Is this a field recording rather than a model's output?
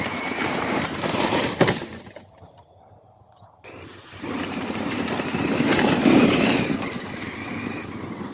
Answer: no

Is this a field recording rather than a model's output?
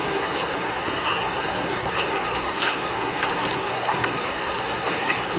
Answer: no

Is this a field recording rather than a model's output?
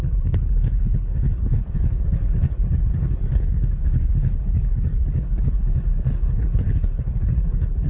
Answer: no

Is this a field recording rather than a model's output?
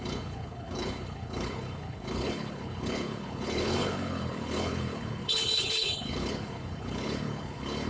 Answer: no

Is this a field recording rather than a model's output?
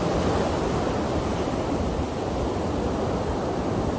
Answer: yes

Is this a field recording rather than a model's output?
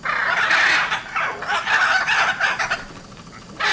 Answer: yes